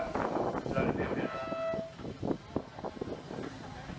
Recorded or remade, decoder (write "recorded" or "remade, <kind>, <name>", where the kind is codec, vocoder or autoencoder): recorded